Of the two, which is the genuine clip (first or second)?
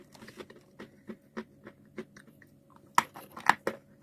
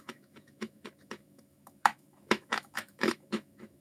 first